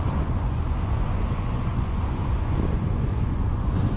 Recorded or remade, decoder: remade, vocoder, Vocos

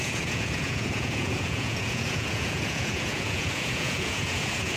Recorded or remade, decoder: remade, vocoder, Vocos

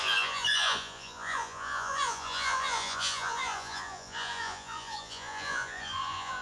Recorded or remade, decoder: remade, vocoder, Vocos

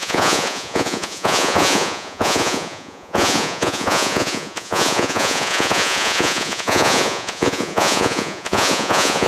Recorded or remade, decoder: remade, vocoder, Vocos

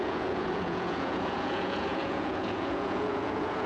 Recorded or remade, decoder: remade, vocoder, Vocos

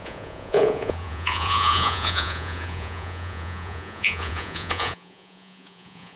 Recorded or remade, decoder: remade, vocoder, Vocos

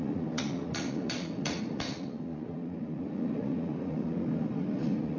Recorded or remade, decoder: remade, vocoder, Vocos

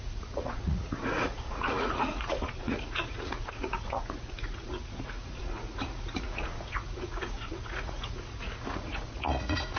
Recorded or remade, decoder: remade, vocoder, Vocos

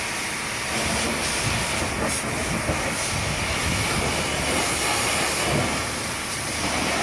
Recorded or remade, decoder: recorded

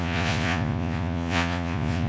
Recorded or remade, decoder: remade, vocoder, Vocos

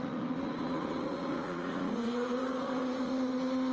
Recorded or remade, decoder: remade, vocoder, Vocos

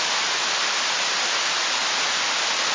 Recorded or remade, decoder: recorded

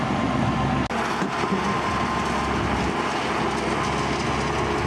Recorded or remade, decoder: recorded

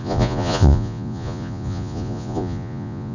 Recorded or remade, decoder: remade, vocoder, Vocos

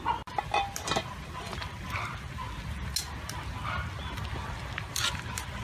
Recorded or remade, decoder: recorded